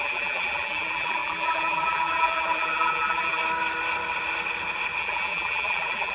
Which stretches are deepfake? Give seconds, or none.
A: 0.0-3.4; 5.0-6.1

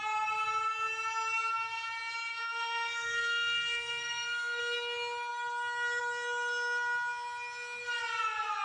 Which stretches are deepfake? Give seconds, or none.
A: 2.3-4.6

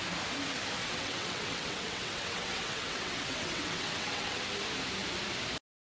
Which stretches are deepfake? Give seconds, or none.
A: 0.8-4.4

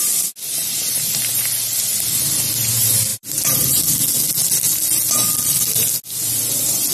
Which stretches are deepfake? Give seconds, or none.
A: 0.6-1.4; 3.1-3.8

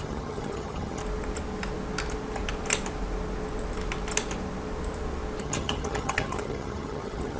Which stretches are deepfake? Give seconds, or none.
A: 0.0-1.0; 5.4-7.4

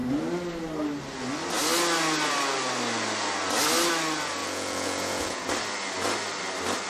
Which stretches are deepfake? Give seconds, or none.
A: 4.4-5.5

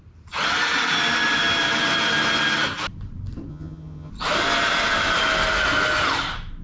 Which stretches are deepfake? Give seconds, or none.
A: 3.5-4.1